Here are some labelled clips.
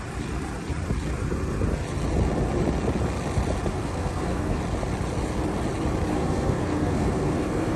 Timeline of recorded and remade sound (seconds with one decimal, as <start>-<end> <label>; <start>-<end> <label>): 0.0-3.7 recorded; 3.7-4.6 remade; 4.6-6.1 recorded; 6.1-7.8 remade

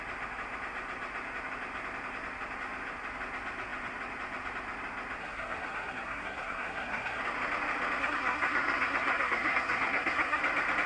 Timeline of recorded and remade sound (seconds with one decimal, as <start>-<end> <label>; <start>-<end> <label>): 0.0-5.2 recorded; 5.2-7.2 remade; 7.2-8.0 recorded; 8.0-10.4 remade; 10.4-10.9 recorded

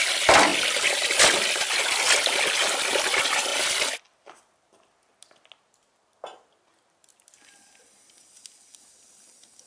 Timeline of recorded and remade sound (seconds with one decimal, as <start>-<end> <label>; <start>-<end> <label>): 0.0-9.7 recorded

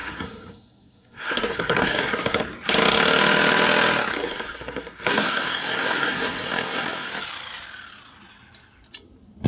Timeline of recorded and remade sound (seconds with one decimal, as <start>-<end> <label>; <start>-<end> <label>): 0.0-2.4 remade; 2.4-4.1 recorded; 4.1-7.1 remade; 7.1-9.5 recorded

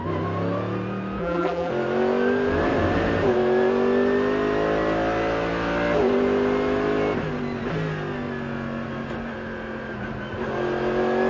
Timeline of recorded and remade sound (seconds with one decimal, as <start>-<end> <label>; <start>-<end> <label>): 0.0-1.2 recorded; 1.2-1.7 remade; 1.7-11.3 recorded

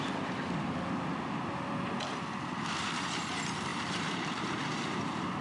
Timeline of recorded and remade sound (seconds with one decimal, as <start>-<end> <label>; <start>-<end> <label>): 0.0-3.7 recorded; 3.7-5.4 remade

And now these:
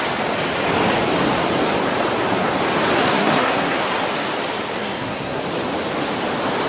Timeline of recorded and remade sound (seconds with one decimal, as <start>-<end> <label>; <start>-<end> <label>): 0.0-3.1 recorded; 3.1-3.8 remade; 3.8-4.8 recorded; 4.8-5.4 remade; 5.4-6.7 recorded

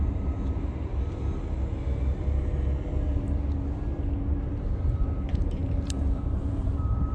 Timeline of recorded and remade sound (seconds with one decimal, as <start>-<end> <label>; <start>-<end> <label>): 0.0-0.9 remade; 0.9-4.3 recorded; 4.3-7.1 remade